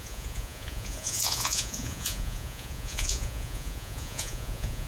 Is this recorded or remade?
remade